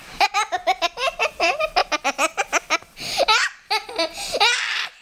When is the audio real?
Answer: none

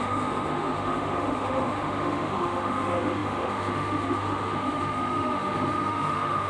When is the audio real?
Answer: none

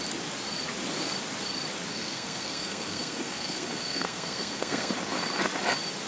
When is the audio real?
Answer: 0.0-1.9; 4.9-6.1

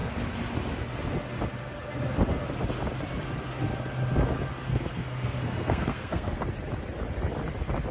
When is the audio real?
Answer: 0.0-4.6; 6.4-7.9

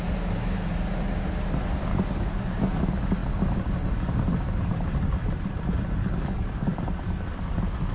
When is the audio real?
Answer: 0.0-1.9; 2.8-6.0; 6.8-7.9

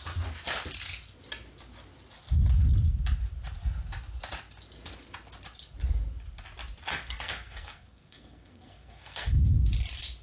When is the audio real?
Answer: 0.0-6.9; 9.4-10.2